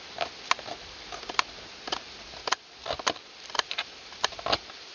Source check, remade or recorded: recorded